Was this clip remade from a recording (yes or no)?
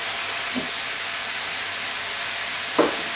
no